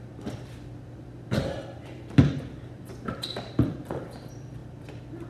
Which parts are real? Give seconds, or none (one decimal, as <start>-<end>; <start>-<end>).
4.6-5.3